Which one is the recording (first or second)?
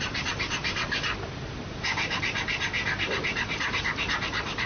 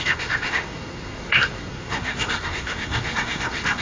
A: first